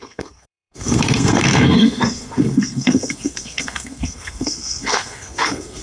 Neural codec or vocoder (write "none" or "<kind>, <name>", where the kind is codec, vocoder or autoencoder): codec, SNAC